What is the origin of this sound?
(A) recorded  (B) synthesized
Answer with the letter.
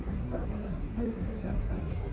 B